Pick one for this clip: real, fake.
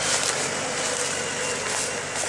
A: real